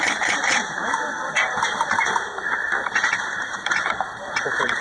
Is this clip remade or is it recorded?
remade